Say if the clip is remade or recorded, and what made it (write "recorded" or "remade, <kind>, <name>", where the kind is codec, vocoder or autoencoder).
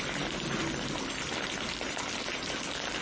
recorded